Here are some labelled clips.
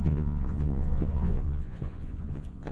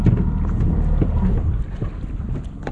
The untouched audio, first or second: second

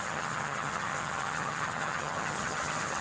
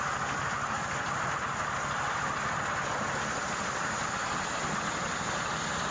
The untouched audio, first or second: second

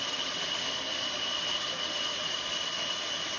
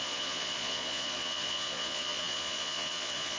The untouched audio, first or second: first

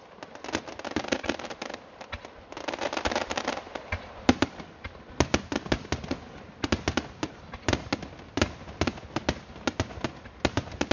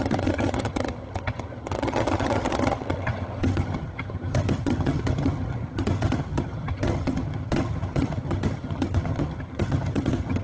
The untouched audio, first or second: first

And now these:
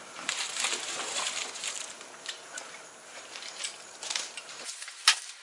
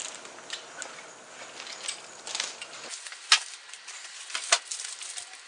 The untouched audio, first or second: second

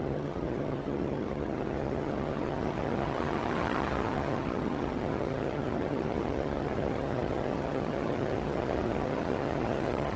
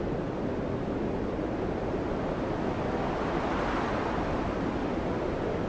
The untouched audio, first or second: second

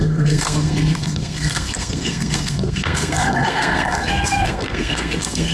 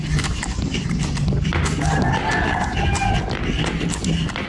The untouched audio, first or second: second